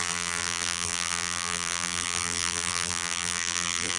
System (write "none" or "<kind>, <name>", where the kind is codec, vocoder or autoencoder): vocoder, BigVGAN v2